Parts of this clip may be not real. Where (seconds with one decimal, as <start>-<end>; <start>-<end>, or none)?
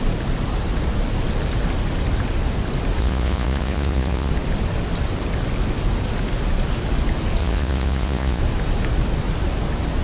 3.0-4.3; 7.4-8.4